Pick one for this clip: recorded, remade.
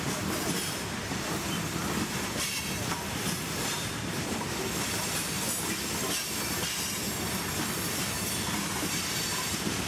remade